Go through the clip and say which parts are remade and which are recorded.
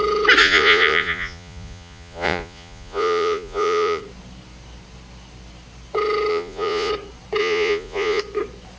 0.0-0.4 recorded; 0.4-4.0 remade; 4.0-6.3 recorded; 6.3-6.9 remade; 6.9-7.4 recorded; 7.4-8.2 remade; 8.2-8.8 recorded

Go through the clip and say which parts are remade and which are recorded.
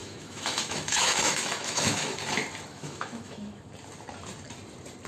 0.0-2.2 remade; 2.2-2.7 recorded; 2.7-3.7 remade; 3.7-5.1 recorded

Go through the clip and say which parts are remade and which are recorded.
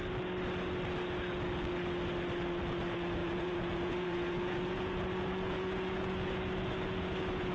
0.0-3.2 recorded; 3.2-7.5 remade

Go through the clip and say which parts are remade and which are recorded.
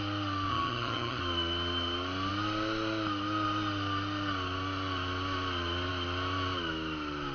0.0-0.5 recorded; 0.5-1.2 remade; 1.2-7.3 recorded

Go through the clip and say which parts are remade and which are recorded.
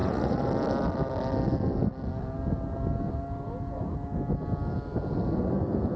0.0-0.5 remade; 0.5-6.0 recorded